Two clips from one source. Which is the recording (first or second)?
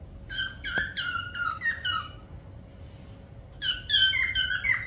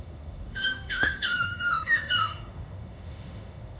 first